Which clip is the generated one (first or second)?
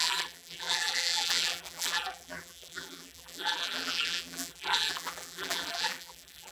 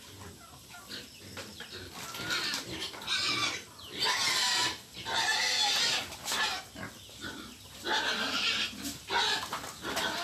first